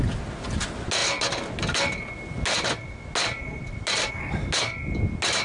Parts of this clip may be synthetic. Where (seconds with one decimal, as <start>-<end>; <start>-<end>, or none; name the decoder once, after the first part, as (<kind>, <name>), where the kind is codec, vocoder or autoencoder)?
none